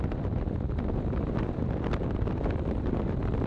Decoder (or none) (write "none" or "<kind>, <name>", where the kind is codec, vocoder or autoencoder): none